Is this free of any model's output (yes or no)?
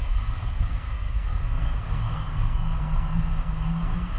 no